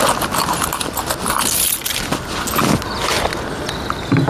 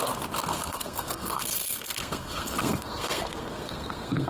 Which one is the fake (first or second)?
second